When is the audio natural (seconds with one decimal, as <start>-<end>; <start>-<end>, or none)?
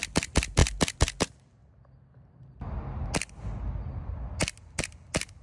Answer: 0.0-5.4